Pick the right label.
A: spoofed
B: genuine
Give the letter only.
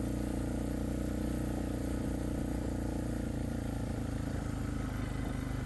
B